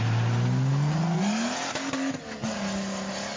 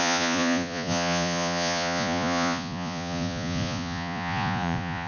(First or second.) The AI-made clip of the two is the second